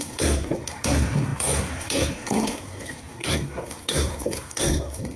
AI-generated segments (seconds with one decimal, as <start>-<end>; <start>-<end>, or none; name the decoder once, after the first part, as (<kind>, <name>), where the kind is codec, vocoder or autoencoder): 0.0-5.2 (codec, SNAC)